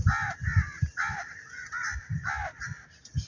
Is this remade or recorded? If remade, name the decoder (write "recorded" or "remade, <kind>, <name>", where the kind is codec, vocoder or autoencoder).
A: recorded